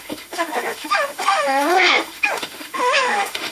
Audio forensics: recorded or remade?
remade